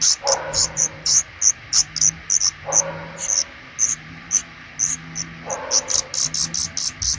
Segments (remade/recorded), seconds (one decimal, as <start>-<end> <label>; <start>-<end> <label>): 0.0-0.6 recorded; 0.6-1.3 remade; 1.3-7.2 recorded